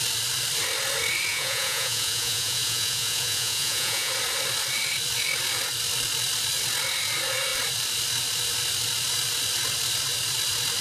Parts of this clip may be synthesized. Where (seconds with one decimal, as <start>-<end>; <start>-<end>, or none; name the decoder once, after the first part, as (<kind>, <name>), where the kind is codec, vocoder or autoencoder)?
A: 1.3-4.1 (vocoder, Vocos)